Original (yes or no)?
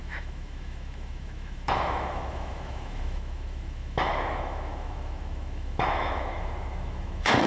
no